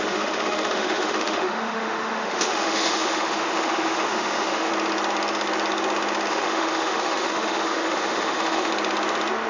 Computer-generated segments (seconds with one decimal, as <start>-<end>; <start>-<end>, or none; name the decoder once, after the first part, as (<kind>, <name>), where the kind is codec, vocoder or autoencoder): 0.0-4.7 (autoencoder, DAC-VAE); 6.3-8.7